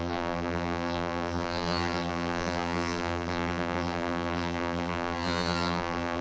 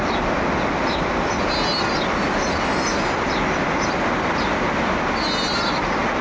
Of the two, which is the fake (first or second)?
first